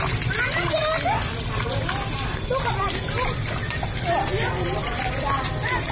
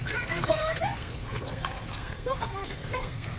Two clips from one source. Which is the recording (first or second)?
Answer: first